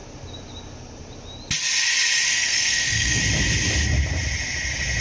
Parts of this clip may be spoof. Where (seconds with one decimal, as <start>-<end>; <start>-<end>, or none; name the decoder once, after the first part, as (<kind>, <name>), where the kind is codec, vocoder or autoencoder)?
2.3-3.2 (codec, SNAC)